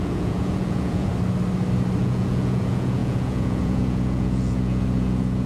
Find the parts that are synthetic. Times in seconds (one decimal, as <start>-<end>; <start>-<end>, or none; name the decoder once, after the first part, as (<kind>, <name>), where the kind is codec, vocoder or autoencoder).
0.0-1.1 (vocoder, Vocos); 2.0-5.5